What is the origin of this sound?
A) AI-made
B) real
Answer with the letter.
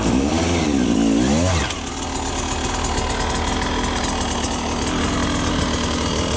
B